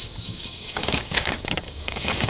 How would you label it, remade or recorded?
remade